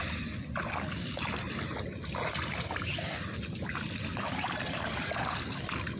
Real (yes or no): yes